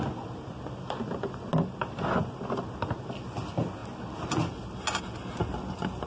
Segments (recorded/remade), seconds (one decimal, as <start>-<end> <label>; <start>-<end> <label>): 0.0-6.1 recorded